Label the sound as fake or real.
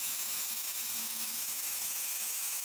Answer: fake